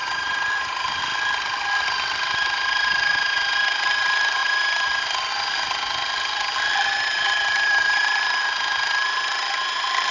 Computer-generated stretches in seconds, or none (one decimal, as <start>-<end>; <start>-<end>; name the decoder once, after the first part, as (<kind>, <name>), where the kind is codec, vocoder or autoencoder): none